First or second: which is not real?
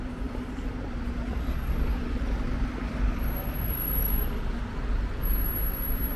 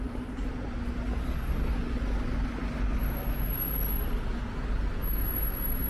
first